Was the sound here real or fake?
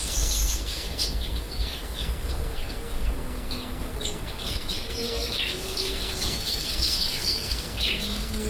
fake